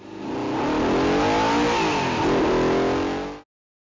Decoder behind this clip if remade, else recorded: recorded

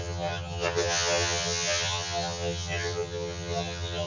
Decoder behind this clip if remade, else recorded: remade, vocoder, HiFi-GAN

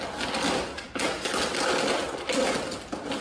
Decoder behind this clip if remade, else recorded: recorded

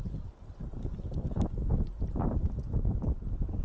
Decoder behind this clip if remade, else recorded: recorded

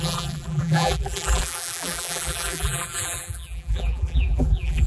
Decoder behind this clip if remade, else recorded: remade, vocoder, BigVGAN v2